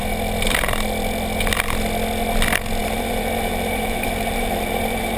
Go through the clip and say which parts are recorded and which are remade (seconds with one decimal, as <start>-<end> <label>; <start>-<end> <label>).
0.0-2.8 recorded; 2.8-5.2 remade